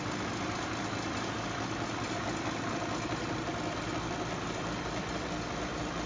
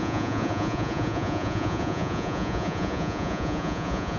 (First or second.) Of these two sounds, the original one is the first